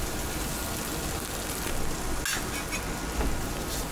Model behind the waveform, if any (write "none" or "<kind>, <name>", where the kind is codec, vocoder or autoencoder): none